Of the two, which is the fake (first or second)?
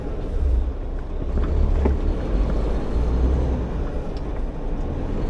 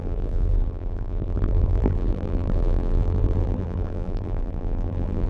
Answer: second